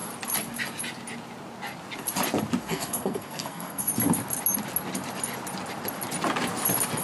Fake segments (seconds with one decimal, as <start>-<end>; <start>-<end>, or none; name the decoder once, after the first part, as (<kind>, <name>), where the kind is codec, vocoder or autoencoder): 2.6-3.9 (codec, SNAC)